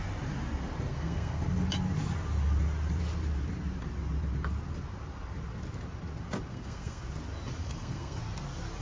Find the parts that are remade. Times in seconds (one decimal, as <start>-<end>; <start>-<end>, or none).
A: 0.9-1.4; 6.5-7.0; 7.6-8.2